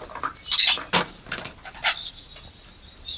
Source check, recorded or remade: recorded